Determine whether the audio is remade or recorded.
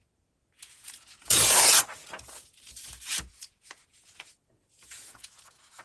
remade